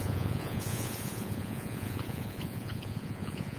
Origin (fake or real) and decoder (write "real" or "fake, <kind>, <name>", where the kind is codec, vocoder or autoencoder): fake, vocoder, Vocos